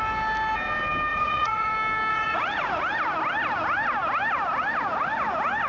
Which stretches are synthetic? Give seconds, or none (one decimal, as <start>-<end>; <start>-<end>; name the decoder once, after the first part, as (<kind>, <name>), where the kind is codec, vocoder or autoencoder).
1.1-1.7 (vocoder, Vocos); 2.1-2.8